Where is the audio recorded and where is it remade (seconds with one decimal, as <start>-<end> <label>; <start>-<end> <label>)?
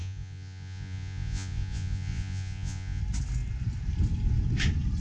0.0-3.0 remade; 3.0-5.0 recorded